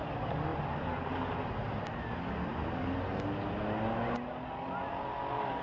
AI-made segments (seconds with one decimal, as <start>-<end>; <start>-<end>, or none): none